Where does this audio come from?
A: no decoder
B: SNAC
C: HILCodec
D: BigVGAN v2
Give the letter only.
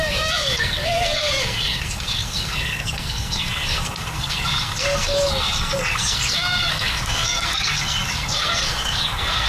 B